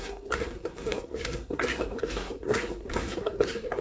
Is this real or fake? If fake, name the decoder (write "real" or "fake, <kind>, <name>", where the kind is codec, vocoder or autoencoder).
fake, codec, SNAC